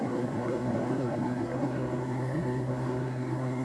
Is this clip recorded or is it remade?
remade